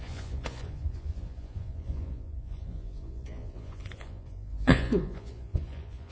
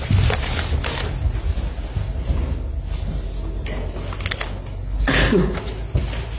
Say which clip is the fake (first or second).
first